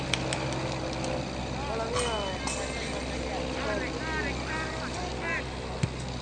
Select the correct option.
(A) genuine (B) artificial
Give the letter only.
A